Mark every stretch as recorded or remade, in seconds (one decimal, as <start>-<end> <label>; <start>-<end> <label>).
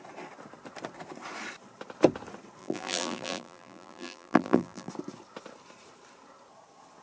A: 0.0-2.6 recorded; 2.6-4.9 remade; 4.9-7.0 recorded